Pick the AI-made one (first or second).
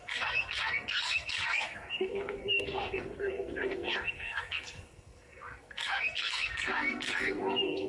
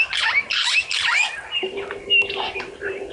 first